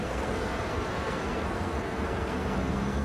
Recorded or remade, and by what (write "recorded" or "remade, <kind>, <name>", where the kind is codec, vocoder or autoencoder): remade, codec, SNAC